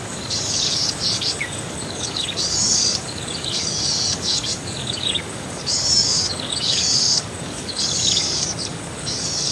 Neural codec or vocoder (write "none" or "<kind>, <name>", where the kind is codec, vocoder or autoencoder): codec, DAC